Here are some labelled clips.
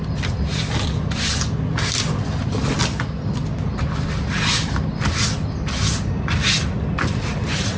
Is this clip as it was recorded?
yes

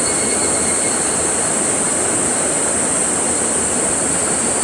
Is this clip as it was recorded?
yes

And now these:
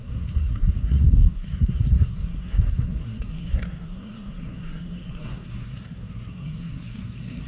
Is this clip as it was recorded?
no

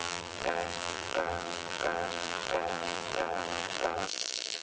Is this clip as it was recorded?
no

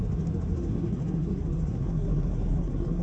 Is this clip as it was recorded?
no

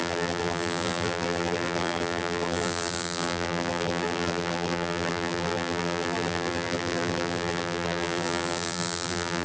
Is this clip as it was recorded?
no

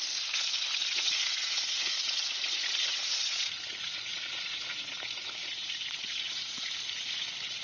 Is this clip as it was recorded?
no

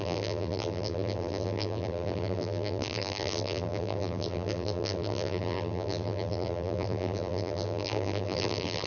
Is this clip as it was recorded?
no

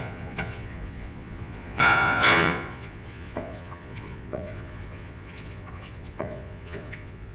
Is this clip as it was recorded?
no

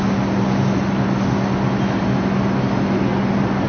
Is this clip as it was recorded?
yes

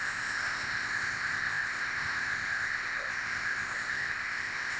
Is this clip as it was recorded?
no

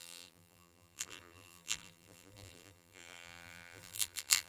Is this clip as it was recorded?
no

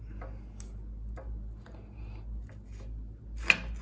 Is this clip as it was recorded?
yes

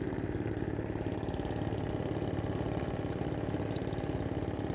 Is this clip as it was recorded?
yes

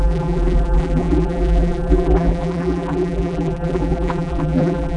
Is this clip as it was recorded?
no